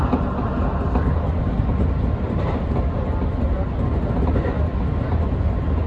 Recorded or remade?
recorded